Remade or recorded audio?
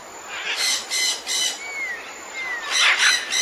recorded